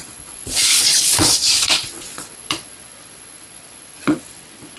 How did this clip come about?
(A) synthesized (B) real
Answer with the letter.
A